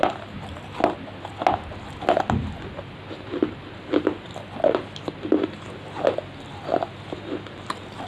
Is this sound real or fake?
real